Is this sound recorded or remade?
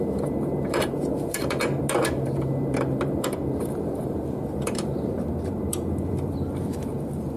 remade